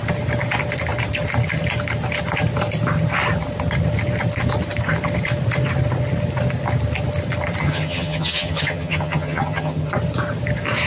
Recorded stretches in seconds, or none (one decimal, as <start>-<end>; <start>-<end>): 0.0-7.6; 9.9-10.9